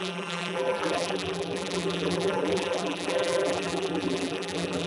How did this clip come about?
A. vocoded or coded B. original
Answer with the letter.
A